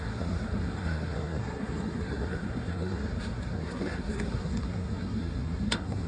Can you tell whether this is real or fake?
fake